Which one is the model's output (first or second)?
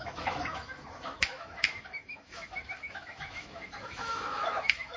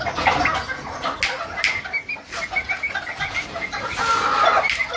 first